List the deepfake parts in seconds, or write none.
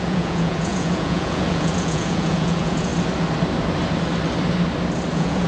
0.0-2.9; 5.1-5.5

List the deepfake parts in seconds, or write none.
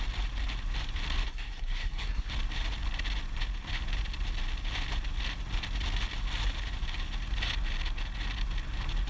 1.3-2.3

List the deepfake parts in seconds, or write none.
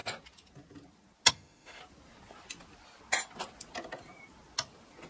1.3-1.8